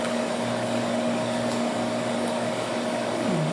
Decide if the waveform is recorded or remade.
remade